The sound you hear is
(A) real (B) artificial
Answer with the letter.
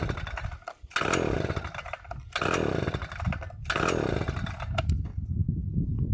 A